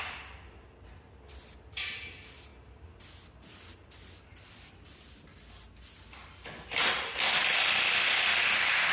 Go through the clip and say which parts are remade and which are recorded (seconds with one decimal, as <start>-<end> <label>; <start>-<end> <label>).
0.0-8.9 recorded